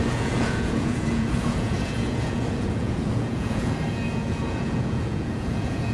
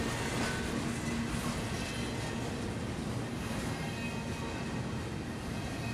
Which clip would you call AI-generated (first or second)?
first